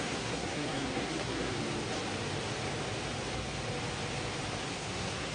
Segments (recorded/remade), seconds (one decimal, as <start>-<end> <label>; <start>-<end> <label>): 0.0-1.6 remade; 1.6-4.7 recorded; 4.7-5.3 remade